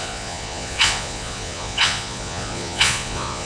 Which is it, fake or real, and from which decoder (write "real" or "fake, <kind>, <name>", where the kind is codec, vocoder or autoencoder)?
fake, vocoder, Vocos